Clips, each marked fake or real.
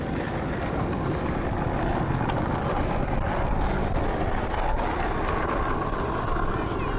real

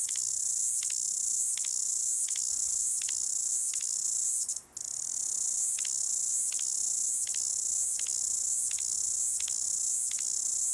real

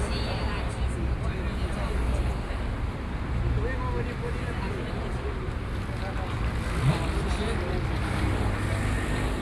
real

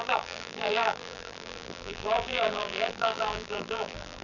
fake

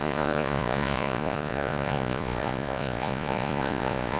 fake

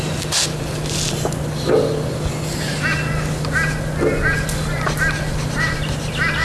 real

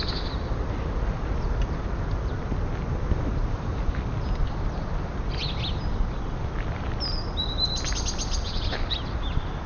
real